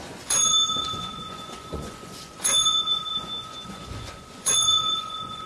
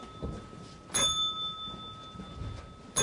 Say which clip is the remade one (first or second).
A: first